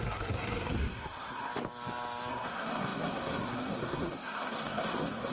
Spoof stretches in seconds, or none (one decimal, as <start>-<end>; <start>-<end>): 0.0-1.5; 2.3-5.3